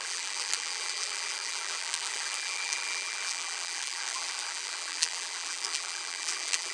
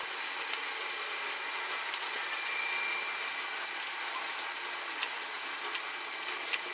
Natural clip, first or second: second